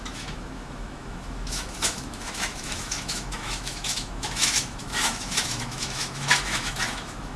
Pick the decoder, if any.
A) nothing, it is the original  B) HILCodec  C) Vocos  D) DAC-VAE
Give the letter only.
D